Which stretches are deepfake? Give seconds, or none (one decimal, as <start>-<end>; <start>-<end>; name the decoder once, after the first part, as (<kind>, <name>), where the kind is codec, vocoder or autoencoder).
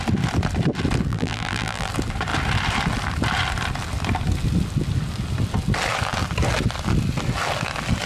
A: 1.1-1.9 (vocoder, BigVGAN v2)